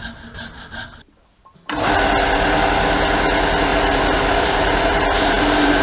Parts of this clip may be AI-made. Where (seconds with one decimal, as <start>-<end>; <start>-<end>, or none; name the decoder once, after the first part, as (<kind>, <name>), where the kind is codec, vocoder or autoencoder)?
3.7-5.8 (vocoder, BigVGAN v2)